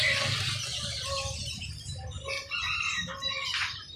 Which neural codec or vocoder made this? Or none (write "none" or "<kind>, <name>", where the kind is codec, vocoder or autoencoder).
none